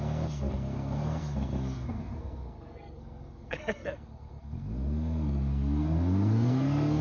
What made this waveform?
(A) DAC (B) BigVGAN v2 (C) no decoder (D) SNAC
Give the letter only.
D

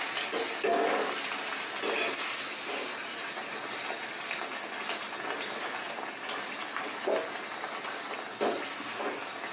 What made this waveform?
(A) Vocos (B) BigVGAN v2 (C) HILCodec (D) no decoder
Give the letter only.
D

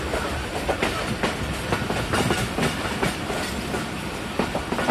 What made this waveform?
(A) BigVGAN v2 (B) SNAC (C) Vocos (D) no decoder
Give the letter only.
D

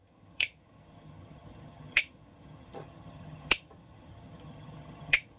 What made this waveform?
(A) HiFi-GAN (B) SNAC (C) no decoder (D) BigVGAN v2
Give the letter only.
A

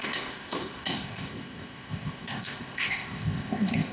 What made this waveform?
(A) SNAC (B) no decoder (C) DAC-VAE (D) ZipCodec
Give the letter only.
D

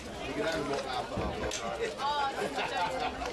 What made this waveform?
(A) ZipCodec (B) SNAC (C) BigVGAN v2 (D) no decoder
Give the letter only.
D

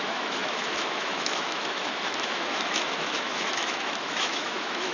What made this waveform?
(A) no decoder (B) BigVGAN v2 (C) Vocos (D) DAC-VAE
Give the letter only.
D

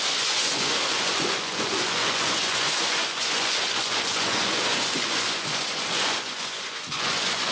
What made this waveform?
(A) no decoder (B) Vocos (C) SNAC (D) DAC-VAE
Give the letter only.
B